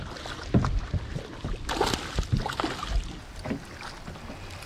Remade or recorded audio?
recorded